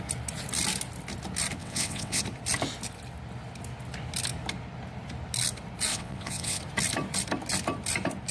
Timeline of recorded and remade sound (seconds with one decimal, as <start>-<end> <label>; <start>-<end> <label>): 0.0-1.6 recorded; 1.6-2.2 remade; 2.2-5.9 recorded; 5.9-6.6 remade; 6.6-8.3 recorded

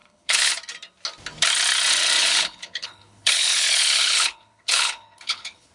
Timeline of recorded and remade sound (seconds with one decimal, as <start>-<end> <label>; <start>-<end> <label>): 0.0-0.5 remade; 0.5-2.2 recorded; 2.2-5.7 remade